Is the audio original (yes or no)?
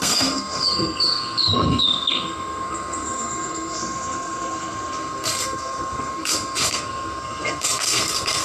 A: no